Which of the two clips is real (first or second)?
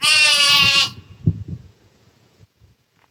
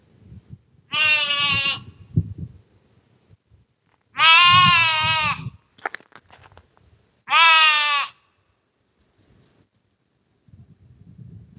second